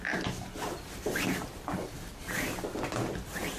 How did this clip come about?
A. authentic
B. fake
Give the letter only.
A